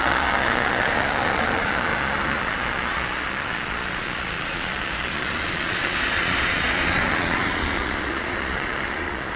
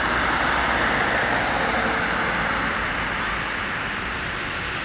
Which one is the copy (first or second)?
first